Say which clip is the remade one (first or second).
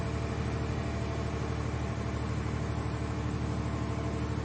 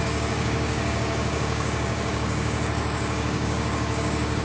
second